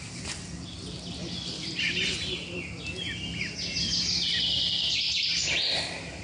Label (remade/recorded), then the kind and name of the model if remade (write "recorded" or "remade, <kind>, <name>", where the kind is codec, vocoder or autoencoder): recorded